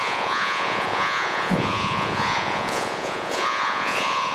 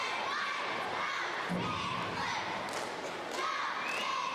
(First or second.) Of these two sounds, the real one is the second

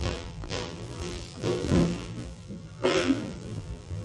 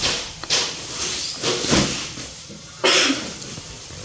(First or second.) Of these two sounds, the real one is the second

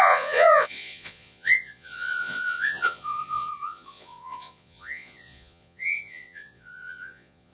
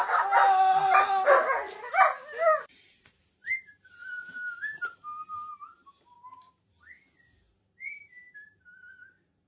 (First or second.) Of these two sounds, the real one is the second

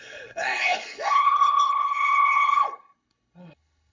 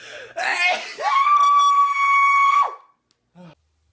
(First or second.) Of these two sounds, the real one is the second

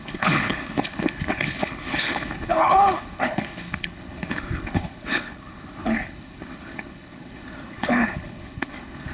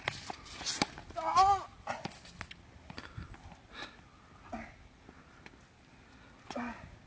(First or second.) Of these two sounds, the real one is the second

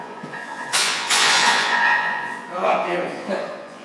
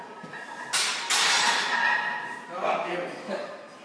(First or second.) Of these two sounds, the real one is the second